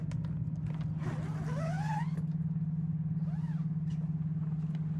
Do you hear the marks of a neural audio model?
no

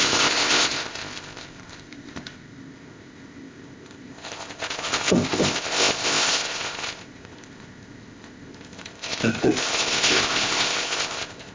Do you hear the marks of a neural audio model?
yes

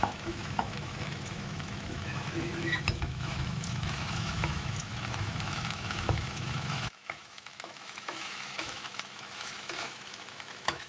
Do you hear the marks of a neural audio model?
yes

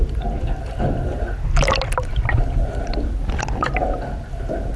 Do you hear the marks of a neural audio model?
no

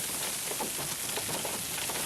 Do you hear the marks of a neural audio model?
no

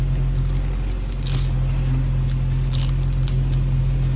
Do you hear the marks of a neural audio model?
no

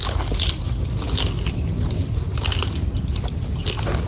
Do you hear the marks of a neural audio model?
no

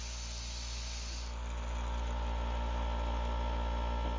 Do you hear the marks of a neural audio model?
no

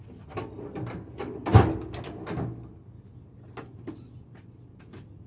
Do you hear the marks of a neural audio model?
no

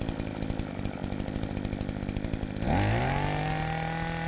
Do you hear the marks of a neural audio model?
no